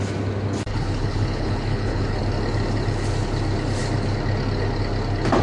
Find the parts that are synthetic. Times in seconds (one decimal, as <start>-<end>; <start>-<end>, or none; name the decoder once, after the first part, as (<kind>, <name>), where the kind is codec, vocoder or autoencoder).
0.7-2.2 (codec, HILCodec)